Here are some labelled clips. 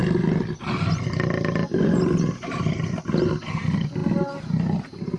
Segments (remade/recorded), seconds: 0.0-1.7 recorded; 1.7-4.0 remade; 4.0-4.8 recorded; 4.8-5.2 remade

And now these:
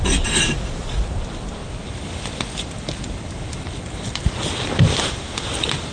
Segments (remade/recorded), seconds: 0.0-5.9 recorded

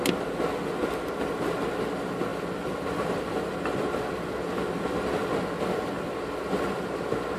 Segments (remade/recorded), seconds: 0.0-7.4 recorded

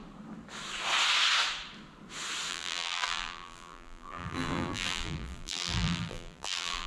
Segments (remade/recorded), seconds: 0.0-2.5 recorded; 2.5-6.9 remade

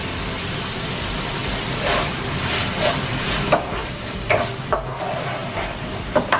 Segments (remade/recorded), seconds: 0.0-5.4 recorded; 5.4-6.4 remade

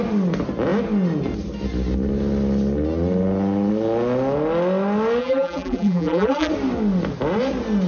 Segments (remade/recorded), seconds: 0.0-5.2 recorded; 5.2-6.5 remade; 6.5-7.9 recorded

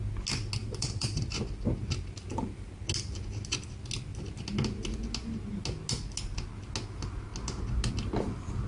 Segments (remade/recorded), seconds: 0.0-0.6 recorded; 0.6-1.4 remade; 1.4-8.7 recorded